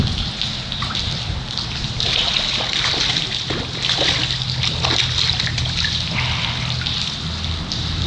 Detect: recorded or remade recorded